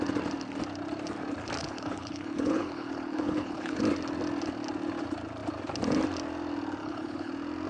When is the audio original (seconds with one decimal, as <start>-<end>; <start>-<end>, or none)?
0.0-1.6; 3.8-6.8; 7.3-7.7